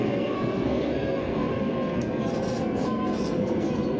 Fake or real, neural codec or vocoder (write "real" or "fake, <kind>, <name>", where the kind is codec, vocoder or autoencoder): fake, codec, SNAC